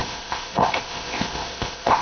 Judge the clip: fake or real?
fake